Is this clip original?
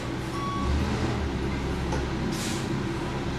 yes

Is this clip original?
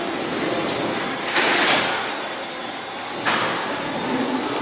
yes